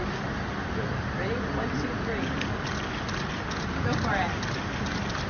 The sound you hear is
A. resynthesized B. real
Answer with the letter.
B